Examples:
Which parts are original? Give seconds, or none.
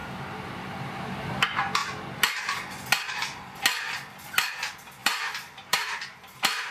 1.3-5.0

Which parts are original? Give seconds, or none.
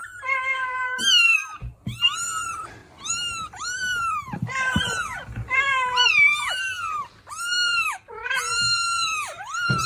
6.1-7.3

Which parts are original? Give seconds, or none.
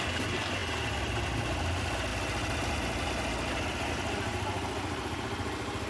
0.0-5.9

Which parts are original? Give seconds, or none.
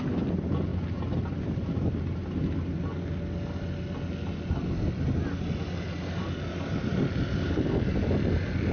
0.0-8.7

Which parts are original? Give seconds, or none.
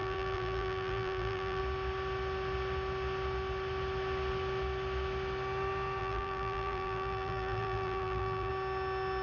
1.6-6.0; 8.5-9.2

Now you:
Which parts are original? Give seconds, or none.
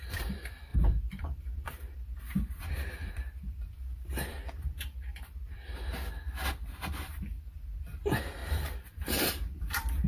none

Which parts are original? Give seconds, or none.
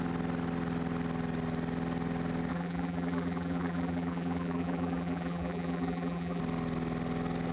0.0-2.5; 6.4-7.5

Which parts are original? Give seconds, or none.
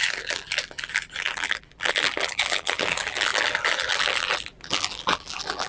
none